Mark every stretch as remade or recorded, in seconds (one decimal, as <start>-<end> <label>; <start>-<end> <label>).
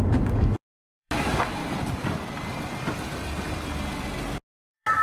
0.0-1.6 remade; 1.6-4.6 recorded; 4.6-5.0 remade